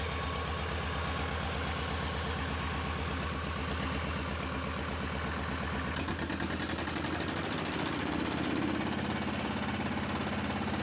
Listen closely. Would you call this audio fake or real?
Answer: real